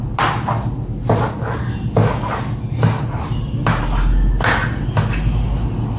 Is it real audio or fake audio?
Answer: real